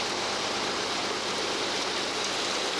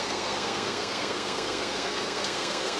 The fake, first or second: second